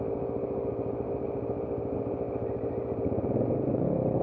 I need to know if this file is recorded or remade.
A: recorded